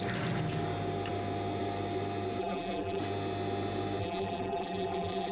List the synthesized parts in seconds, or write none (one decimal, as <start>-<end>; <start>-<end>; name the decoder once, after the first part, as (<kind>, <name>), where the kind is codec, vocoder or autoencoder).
2.4-3.0 (vocoder, BigVGAN v2); 4.0-5.3